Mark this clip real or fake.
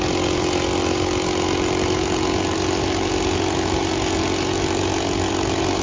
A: real